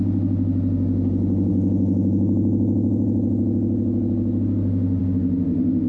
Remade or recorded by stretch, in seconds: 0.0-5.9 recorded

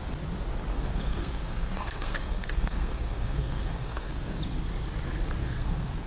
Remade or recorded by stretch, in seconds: 0.0-0.7 recorded; 0.7-4.4 remade; 4.4-5.4 recorded; 5.4-6.1 remade